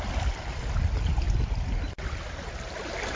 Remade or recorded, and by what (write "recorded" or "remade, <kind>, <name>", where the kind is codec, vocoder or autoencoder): recorded